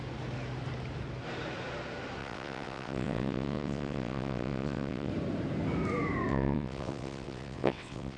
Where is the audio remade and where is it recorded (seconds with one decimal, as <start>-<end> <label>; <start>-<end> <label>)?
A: 0.0-2.2 recorded; 2.2-5.1 remade; 5.1-6.3 recorded; 6.3-8.2 remade